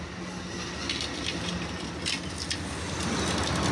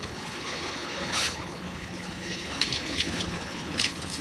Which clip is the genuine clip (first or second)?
first